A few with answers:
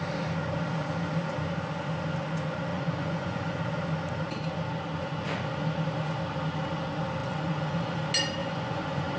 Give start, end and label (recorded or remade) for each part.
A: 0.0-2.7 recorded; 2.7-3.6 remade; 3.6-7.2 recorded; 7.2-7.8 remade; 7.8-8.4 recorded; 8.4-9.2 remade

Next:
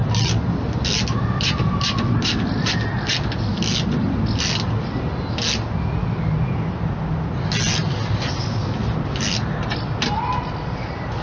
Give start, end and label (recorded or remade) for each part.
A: 0.0-11.2 recorded

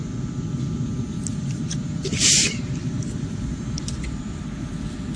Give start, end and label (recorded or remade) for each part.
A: 0.0-1.3 recorded; 1.3-4.4 remade; 4.4-5.2 recorded

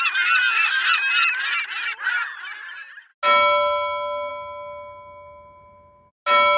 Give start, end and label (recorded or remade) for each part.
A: 0.0-6.6 recorded

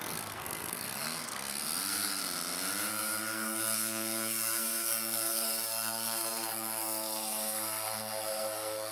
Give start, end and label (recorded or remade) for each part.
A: 0.0-2.2 remade; 2.2-2.9 recorded; 2.9-8.9 remade